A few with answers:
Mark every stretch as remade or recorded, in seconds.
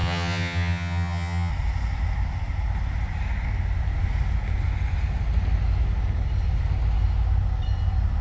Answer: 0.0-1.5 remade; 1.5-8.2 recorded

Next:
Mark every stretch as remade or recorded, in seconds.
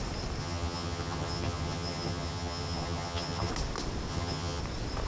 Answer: 0.0-0.4 recorded; 0.4-3.5 remade; 3.5-4.1 recorded; 4.1-4.6 remade; 4.6-5.1 recorded